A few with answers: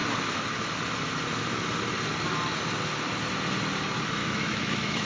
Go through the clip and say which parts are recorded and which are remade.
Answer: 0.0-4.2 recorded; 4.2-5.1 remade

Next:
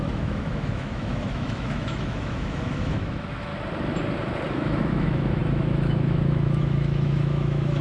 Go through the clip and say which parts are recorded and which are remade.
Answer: 0.0-3.5 remade; 3.5-4.5 recorded; 4.5-7.8 remade

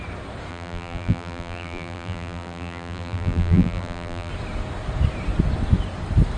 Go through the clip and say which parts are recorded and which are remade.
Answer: 0.0-0.5 recorded; 0.5-4.3 remade; 4.3-6.4 recorded

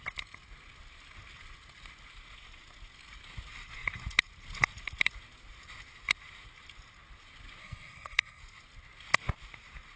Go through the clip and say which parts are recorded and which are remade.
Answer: 0.0-7.6 recorded; 7.6-8.4 remade; 8.4-10.0 recorded